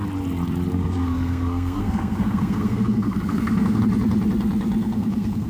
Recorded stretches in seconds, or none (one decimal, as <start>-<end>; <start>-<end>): 0.0-0.7; 3.8-4.8